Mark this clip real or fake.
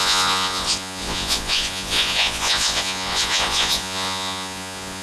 fake